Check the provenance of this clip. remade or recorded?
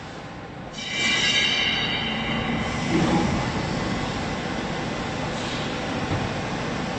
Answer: remade